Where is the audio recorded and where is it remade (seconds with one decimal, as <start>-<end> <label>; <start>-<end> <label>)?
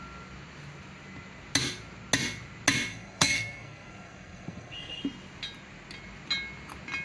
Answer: 0.0-2.9 recorded; 2.9-5.0 remade; 5.0-7.0 recorded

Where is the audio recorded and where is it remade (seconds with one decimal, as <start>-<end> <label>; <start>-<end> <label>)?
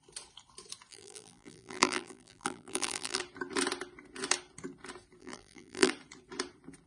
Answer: 0.0-0.9 recorded; 0.9-3.2 remade; 3.2-5.2 recorded; 5.2-5.9 remade; 5.9-6.9 recorded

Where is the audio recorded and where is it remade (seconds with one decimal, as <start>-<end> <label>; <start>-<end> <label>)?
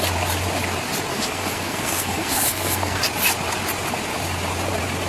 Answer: 0.0-1.1 recorded; 1.1-3.0 remade; 3.0-5.1 recorded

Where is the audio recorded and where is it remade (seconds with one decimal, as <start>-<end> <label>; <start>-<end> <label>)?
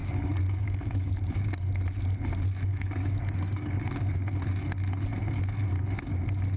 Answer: 0.0-1.1 remade; 1.1-2.7 recorded; 2.7-3.8 remade; 3.8-6.6 recorded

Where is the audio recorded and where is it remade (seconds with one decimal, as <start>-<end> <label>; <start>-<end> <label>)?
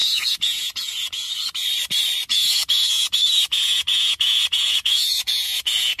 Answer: 0.0-1.3 remade; 1.3-2.3 recorded; 2.3-6.0 remade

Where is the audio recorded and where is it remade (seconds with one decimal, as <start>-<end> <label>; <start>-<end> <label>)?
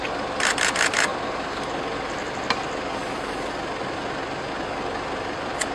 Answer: 0.0-5.7 recorded